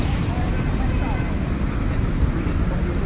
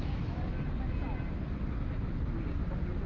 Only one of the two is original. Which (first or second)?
second